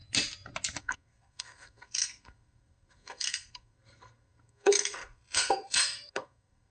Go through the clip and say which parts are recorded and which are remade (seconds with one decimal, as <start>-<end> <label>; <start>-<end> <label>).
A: 0.0-0.8 recorded; 0.8-6.7 remade